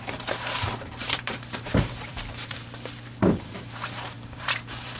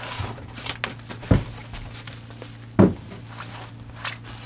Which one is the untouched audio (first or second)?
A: second